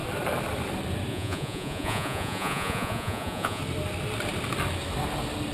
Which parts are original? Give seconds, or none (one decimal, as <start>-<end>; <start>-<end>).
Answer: 0.0-1.1; 3.6-5.5